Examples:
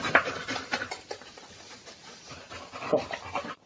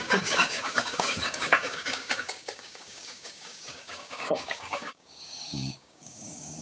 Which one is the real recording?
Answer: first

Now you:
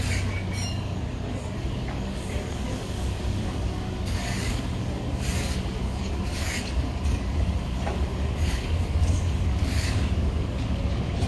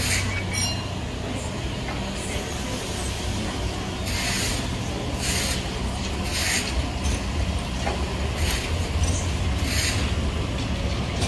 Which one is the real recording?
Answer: second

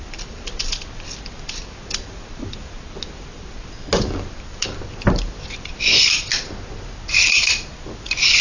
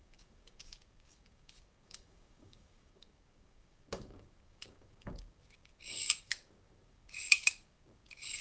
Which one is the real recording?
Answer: first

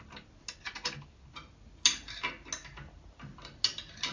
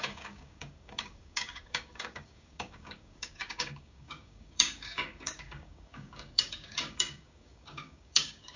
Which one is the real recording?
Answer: first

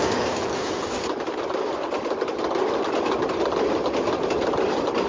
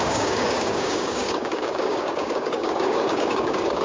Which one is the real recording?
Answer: first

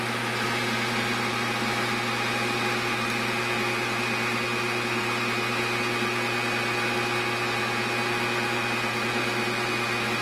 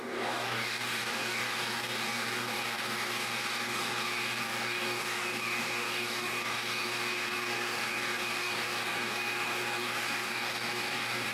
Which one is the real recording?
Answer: first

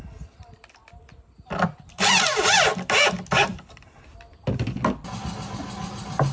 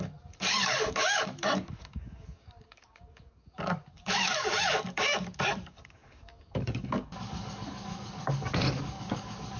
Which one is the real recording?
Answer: first